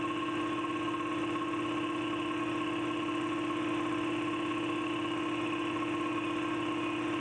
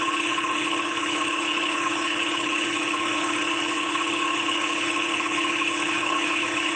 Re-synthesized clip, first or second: second